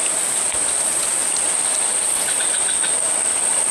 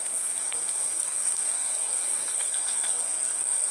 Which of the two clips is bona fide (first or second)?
first